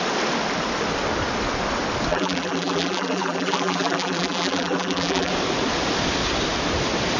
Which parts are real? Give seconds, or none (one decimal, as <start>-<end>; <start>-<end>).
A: 0.0-2.1; 5.3-7.2